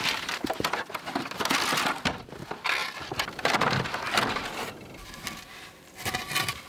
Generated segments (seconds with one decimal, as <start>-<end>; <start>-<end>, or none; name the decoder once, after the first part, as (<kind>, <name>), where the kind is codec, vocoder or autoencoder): none